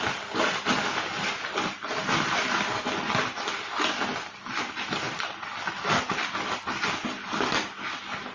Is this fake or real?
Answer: real